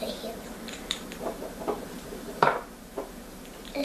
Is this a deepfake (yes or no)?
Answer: yes